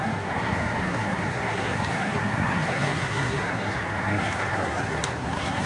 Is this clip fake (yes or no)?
yes